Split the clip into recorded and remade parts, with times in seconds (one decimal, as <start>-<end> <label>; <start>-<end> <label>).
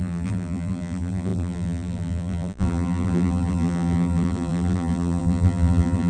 0.0-6.1 remade